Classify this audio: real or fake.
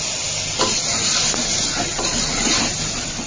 real